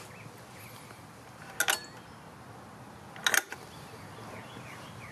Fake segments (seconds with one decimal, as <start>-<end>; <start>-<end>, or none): none